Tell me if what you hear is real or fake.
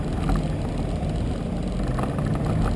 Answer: real